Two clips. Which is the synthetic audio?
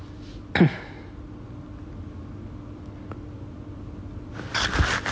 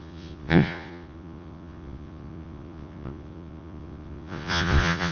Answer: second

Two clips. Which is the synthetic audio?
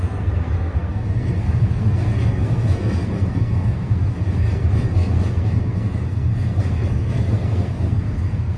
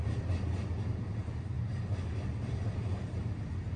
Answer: first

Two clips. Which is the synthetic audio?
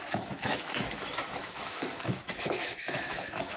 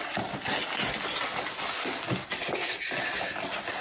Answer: first